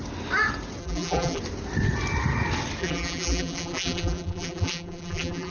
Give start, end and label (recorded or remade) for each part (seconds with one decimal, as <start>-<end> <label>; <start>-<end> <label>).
0.0-0.8 recorded; 0.8-1.4 remade; 1.4-2.8 recorded; 2.8-5.5 remade